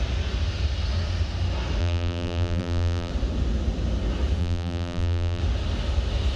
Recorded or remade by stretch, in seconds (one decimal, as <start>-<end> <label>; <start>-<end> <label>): 0.0-1.8 recorded; 1.8-3.1 remade; 3.1-4.4 recorded; 4.4-5.4 remade; 5.4-6.4 recorded